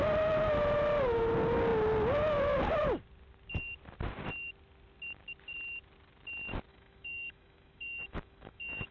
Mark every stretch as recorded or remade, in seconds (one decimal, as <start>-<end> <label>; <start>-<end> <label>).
0.0-6.7 recorded; 6.7-8.9 remade